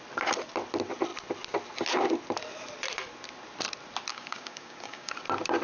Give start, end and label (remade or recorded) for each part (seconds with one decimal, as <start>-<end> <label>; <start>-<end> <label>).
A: 0.0-4.1 recorded; 4.1-5.1 remade; 5.1-5.6 recorded